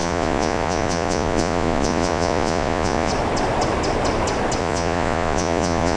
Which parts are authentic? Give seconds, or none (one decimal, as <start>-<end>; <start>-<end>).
3.1-4.6

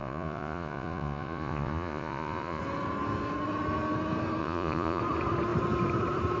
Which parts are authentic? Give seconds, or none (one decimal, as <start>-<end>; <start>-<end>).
2.6-4.4; 5.0-6.4

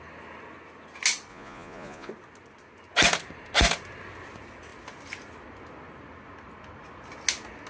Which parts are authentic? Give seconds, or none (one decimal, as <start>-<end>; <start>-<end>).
0.0-1.3; 2.1-7.7

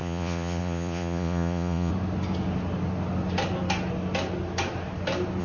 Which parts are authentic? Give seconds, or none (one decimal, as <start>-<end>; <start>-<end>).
1.9-5.4

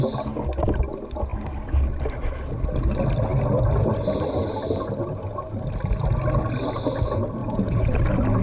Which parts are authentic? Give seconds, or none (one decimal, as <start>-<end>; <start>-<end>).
0.0-7.4; 7.9-8.4

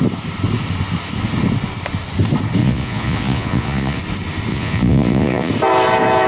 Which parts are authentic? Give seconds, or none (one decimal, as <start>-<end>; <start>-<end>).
0.0-2.6; 4.0-4.5; 5.5-6.3

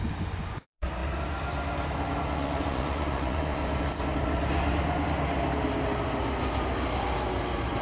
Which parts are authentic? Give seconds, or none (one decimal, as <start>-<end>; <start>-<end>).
1.0-2.3; 3.6-7.8

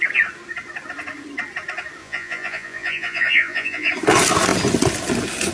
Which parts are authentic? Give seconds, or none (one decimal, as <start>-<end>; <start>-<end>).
0.0-2.0; 3.9-5.5